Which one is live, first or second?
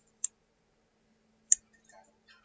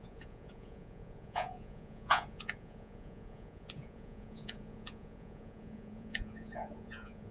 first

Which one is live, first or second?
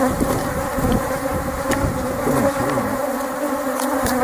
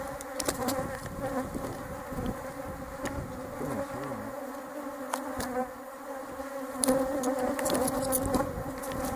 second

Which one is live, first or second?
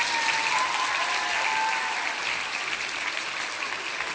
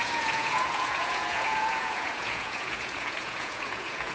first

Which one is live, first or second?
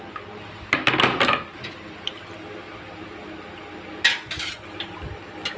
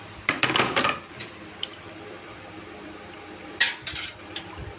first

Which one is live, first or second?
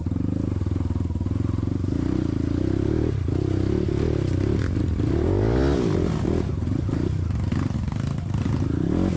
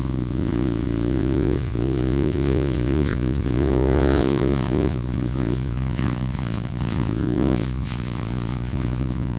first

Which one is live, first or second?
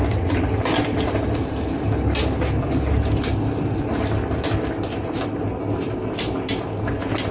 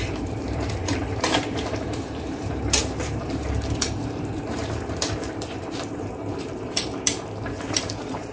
first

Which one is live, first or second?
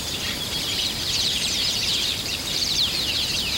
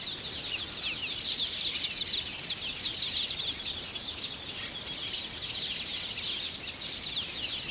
second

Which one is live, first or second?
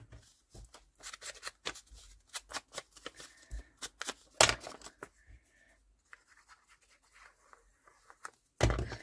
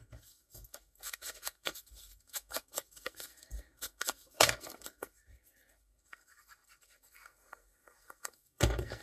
first